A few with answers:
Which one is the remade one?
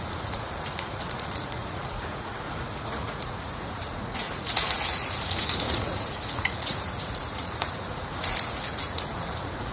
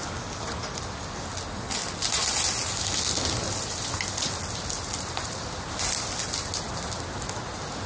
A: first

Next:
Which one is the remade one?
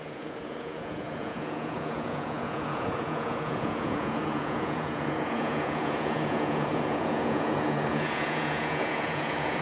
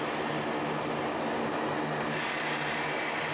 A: first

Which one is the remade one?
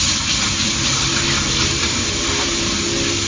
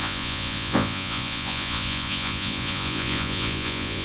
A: second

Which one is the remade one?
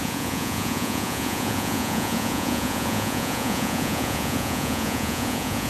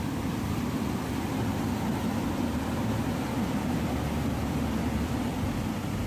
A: first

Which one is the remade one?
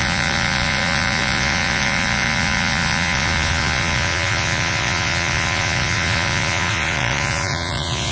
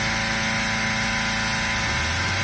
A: first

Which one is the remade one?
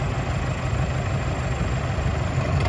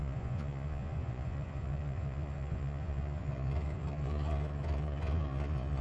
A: second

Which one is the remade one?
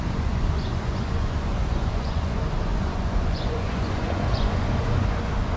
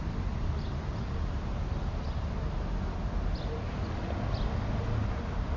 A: first